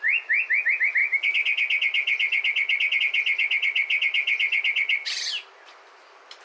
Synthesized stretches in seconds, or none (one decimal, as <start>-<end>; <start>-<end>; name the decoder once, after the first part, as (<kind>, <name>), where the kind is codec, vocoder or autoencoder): none